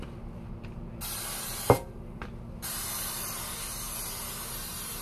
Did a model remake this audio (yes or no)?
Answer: no